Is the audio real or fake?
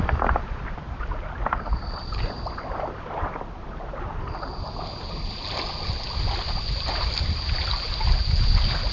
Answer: real